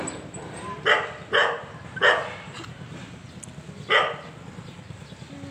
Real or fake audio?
real